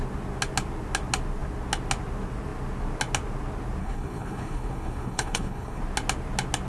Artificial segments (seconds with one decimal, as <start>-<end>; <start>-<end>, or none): 3.8-5.8